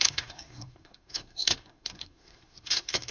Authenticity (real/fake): fake